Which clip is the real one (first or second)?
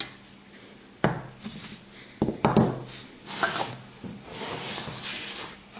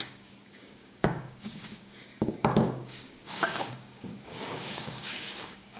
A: first